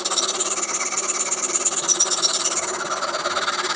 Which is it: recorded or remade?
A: recorded